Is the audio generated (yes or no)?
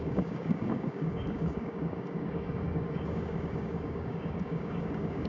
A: yes